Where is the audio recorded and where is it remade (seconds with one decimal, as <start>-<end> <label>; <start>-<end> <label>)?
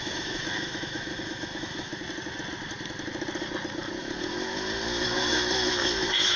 0.0-1.9 remade; 1.9-4.0 recorded; 4.0-6.4 remade